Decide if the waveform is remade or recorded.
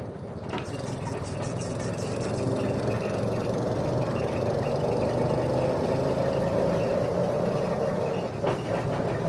recorded